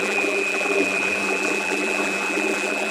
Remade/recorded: remade